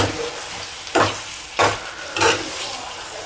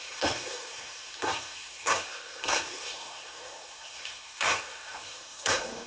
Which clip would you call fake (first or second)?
second